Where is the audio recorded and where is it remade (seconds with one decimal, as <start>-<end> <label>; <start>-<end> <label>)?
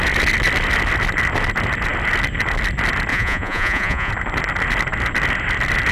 0.0-3.1 recorded; 3.1-4.1 remade; 4.1-5.9 recorded